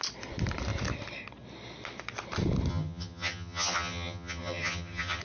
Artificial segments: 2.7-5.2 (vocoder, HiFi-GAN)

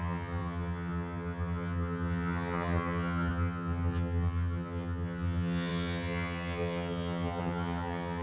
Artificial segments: 0.0-8.2 (vocoder, HiFi-GAN)

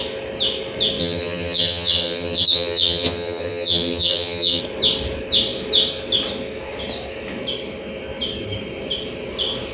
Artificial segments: 1.0-4.6 (vocoder, HiFi-GAN)

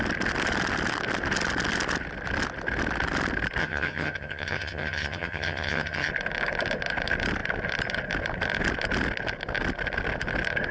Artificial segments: 3.6-6.1 (vocoder, HiFi-GAN)

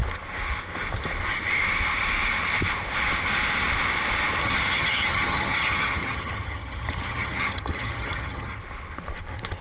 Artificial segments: 4.4-8.6 (vocoder, HiFi-GAN)

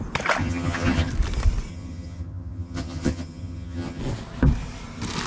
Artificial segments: 0.4-1.1 (vocoder, HiFi-GAN); 1.7-4.0

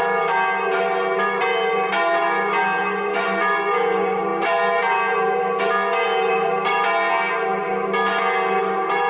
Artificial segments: none

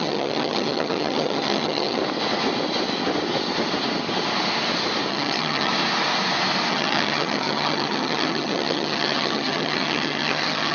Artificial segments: 0.0-2.0 (vocoder, HiFi-GAN); 5.1-5.7; 6.7-10.7